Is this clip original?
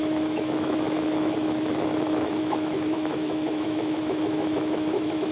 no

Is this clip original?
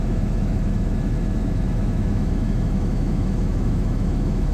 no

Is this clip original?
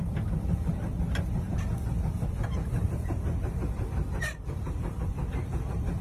yes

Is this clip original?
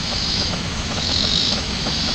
no